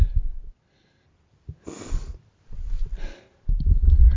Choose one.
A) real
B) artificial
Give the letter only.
A